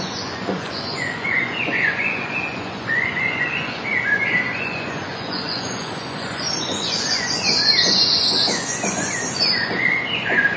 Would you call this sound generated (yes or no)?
yes